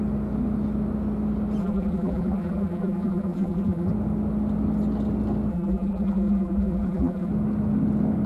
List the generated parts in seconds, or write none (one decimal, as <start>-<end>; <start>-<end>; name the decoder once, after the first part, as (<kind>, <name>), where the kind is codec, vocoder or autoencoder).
1.6-3.9 (vocoder, BigVGAN v2); 5.5-7.3